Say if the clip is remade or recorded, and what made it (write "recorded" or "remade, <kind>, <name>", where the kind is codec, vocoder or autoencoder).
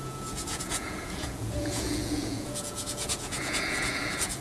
remade, vocoder, Vocos